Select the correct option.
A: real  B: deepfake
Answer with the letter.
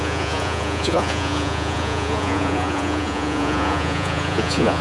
B